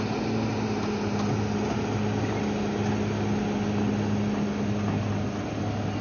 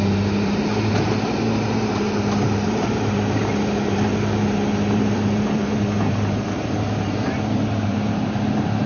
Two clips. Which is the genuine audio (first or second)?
first